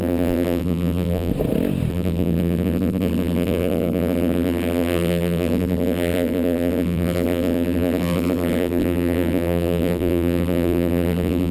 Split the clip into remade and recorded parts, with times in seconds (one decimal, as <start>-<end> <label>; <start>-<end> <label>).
0.0-1.3 remade; 1.3-1.9 recorded; 1.9-11.5 remade

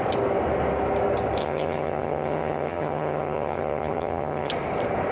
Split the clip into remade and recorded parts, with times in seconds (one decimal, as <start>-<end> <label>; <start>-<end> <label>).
0.0-1.4 recorded; 1.4-4.5 remade; 4.5-5.1 recorded

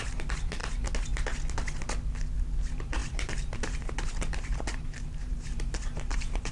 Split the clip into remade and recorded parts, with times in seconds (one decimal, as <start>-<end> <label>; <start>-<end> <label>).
0.0-0.6 remade; 0.6-2.4 recorded; 2.4-6.5 remade

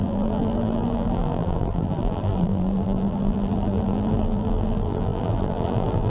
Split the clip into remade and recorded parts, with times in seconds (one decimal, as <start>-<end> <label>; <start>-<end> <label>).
0.0-6.1 remade